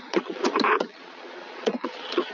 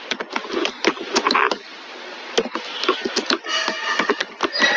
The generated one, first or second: first